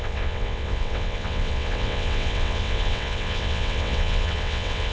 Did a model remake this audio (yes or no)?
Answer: yes